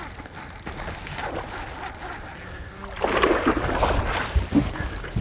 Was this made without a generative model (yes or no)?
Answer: yes